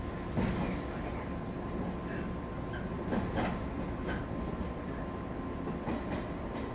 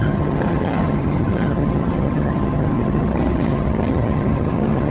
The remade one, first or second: second